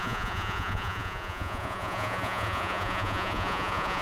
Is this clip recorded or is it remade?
remade